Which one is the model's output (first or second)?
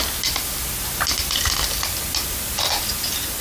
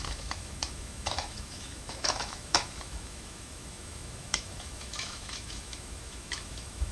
second